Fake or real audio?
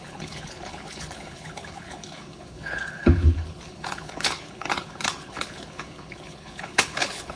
fake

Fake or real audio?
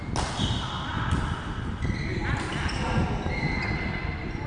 real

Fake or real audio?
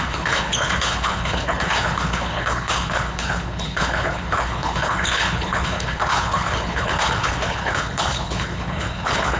fake